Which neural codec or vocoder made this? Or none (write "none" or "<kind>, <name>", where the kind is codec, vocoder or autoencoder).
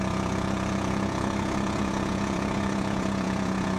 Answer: vocoder, Vocos